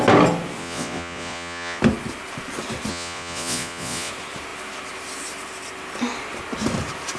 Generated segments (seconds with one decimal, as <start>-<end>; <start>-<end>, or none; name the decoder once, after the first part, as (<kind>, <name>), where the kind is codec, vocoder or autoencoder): 0.6-1.8 (vocoder, Vocos); 2.9-4.1